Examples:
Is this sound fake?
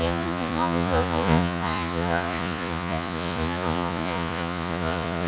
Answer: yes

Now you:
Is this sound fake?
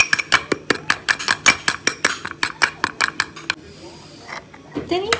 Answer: no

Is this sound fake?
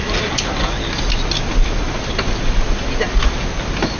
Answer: no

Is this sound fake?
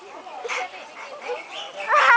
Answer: no